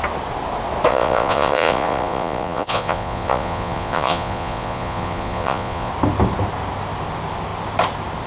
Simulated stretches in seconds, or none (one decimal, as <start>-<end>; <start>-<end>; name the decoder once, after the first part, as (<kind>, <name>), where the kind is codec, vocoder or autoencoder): 0.9-5.9 (vocoder, Vocos)